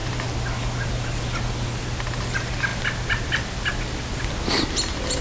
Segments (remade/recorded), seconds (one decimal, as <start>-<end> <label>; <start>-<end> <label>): 0.0-5.2 recorded